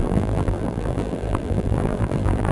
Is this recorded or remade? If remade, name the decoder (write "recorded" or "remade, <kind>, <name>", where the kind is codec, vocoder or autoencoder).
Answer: remade, vocoder, BigVGAN v2